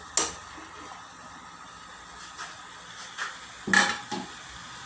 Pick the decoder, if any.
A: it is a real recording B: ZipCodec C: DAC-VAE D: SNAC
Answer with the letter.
A